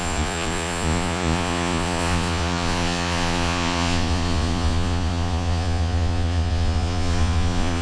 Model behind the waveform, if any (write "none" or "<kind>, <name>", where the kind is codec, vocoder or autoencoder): vocoder, Vocos